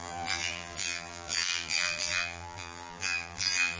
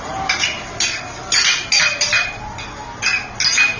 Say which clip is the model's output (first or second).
first